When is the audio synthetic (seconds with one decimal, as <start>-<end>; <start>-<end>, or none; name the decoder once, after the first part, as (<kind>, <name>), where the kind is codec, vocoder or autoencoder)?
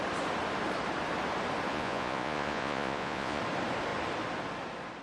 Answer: 1.7-3.4 (vocoder, Vocos)